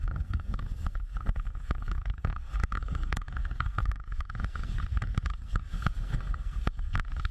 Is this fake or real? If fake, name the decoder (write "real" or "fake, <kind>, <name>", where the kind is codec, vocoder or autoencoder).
fake, codec, SNAC